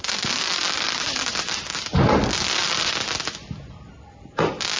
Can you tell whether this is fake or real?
real